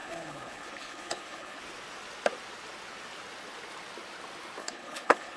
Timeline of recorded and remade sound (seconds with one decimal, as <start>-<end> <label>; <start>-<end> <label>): 0.0-1.6 remade; 1.6-4.6 recorded; 4.6-5.4 remade